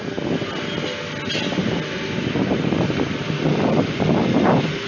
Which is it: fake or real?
real